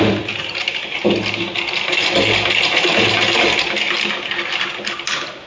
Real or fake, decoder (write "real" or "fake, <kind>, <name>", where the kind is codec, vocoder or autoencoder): real